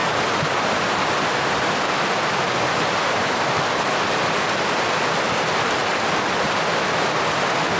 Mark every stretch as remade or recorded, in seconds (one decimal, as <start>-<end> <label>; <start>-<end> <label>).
0.0-7.8 recorded